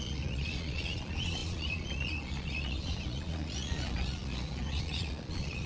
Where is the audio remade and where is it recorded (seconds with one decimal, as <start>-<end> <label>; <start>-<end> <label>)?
0.0-5.7 remade